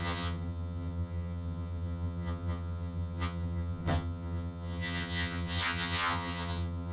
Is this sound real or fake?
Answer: fake